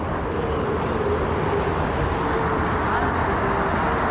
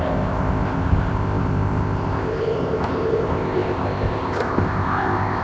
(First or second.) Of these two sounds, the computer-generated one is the second